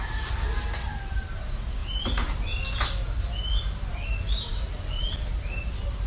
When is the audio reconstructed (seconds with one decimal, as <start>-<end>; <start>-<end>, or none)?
none